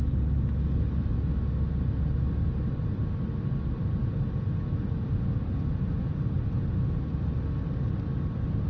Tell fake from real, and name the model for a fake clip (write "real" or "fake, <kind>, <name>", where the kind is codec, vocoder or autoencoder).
real